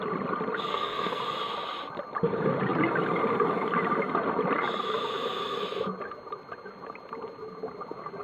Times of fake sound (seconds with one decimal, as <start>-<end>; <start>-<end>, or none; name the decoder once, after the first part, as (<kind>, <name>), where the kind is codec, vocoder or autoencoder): 0.7-1.2 (codec, SNAC)